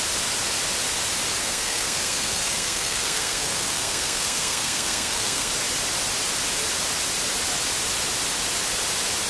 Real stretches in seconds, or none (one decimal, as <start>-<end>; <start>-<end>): 0.0-1.4; 5.5-9.3